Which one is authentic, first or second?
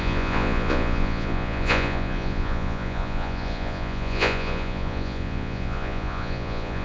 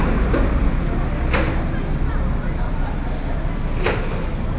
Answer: second